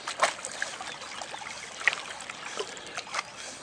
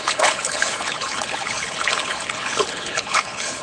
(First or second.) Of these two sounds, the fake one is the second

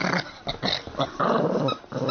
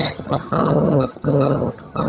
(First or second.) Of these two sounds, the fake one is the second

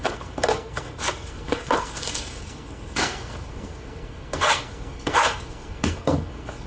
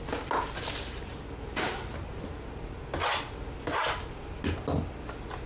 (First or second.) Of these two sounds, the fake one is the first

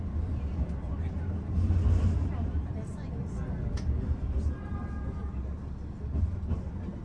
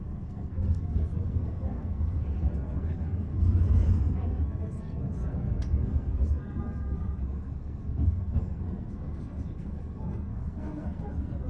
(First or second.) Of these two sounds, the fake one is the second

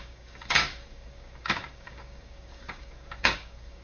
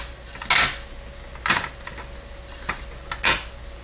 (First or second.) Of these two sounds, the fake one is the first